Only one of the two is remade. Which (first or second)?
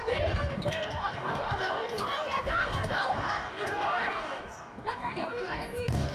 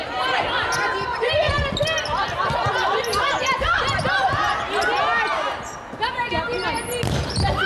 first